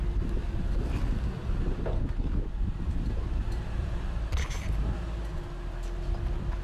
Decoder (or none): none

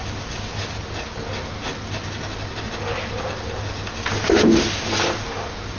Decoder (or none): none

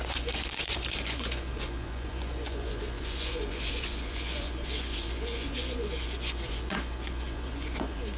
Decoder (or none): vocoder, Vocos